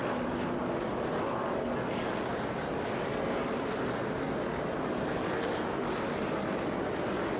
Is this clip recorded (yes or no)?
yes